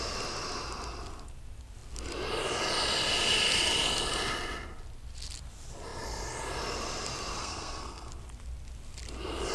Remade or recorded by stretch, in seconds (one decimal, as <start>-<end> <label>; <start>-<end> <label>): 0.0-7.4 recorded; 7.4-8.1 remade; 8.1-9.5 recorded